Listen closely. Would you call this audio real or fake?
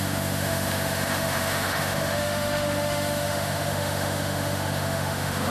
fake